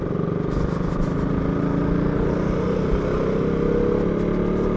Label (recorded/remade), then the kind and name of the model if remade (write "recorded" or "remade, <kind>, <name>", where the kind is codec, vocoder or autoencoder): recorded